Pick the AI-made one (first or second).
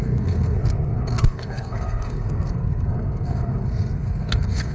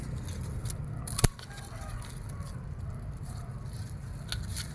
first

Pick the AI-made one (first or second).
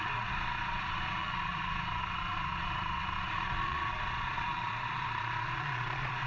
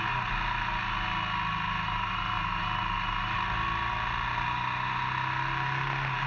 first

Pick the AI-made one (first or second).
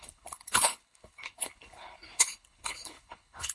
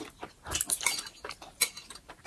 first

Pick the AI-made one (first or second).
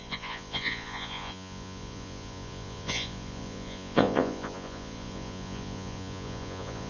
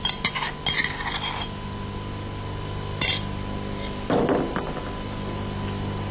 first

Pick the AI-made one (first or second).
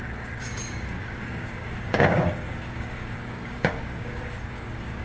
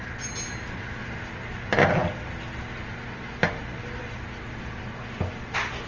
first